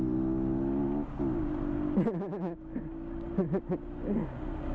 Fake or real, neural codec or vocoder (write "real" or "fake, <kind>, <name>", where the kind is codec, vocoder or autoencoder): real